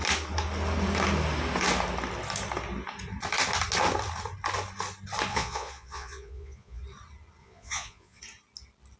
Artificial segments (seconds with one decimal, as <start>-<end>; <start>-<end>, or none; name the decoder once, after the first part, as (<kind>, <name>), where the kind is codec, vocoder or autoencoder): 5.3-6.8 (vocoder, Vocos); 7.4-8.2

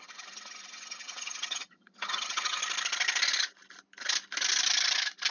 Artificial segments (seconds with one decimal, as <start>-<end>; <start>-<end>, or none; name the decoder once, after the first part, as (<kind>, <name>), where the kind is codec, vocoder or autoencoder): 0.0-2.6 (vocoder, HiFi-GAN)

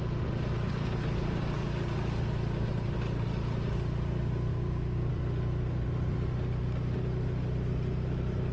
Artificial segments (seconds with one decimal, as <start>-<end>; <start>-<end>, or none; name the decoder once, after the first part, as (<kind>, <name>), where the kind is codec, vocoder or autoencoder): 4.5-5.1 (codec, DAC)

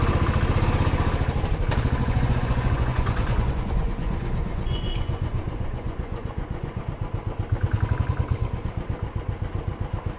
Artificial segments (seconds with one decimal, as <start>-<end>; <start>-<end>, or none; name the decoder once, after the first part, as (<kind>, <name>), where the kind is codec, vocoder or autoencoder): 2.0-6.8 (vocoder, Vocos)

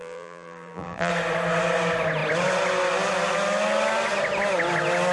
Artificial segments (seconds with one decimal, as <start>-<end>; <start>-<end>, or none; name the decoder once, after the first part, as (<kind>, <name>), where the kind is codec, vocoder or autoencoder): 0.0-1.1 (vocoder, BigVGAN v2)

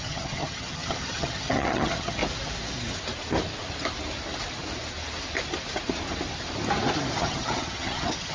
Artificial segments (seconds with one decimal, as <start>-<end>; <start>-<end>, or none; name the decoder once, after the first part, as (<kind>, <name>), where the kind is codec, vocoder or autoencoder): 0.0-2.2 (vocoder, HiFi-GAN); 7.2-8.3